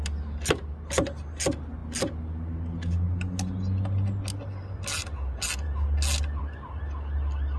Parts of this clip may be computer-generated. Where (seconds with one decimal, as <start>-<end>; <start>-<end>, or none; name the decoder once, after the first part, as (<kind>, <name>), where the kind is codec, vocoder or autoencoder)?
none